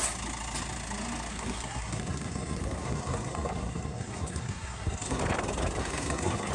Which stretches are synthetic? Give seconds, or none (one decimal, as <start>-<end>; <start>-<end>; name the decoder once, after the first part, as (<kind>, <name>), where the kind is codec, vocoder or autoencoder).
1.3-5.2 (codec, SNAC); 5.8-6.5